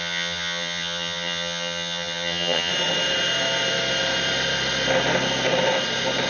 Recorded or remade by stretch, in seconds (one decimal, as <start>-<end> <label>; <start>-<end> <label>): 0.0-2.7 remade; 2.7-6.3 recorded